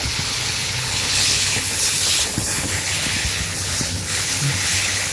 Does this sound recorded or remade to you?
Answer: remade